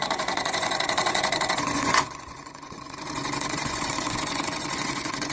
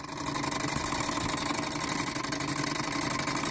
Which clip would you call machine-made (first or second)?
first